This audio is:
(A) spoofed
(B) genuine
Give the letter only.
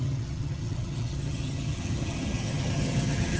A